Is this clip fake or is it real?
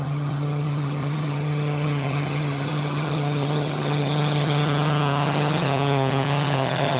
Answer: fake